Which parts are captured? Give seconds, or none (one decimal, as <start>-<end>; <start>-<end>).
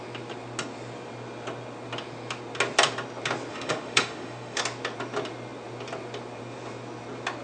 0.0-3.5; 4.6-7.4